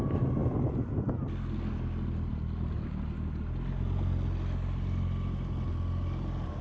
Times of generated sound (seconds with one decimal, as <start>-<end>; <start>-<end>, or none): 0.4-1.0